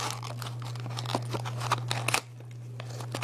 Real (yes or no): yes